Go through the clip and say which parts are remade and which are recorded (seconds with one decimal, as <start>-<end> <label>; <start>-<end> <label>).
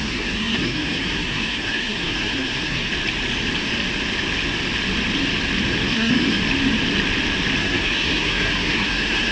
0.0-2.9 remade; 2.9-5.9 recorded; 5.9-6.4 remade; 6.4-7.6 recorded; 7.6-9.3 remade